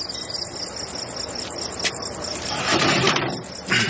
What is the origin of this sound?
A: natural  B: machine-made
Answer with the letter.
A